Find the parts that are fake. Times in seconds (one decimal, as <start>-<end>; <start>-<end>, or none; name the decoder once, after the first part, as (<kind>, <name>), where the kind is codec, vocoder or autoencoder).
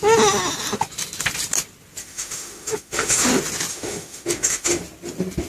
2.0-3.3 (autoencoder, DAC-VAE); 3.7-4.8